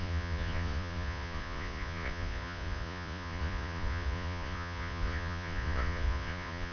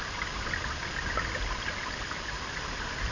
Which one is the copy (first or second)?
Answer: first